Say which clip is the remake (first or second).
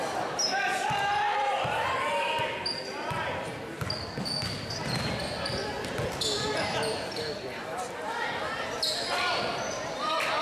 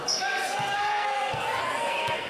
second